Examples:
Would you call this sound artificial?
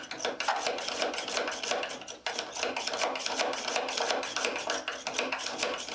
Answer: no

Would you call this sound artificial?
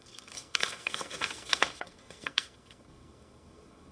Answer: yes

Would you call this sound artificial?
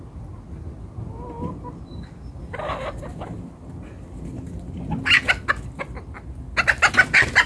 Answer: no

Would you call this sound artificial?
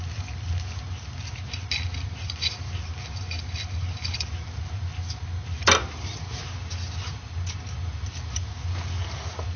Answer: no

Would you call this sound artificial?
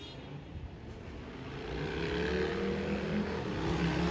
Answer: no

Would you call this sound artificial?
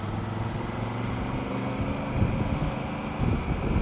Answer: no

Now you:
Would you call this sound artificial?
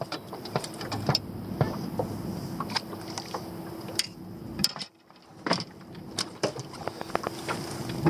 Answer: yes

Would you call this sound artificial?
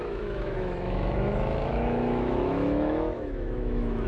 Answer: yes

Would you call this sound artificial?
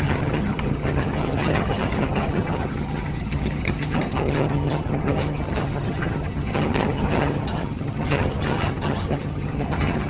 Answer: yes